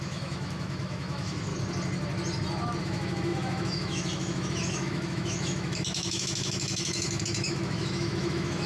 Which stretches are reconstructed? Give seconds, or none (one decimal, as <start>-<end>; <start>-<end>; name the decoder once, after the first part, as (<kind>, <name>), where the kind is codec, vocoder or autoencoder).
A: 0.0-1.5 (autoencoder, DAC-VAE); 2.8-8.7